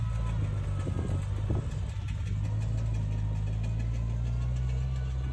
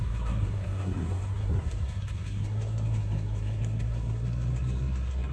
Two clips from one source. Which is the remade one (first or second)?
second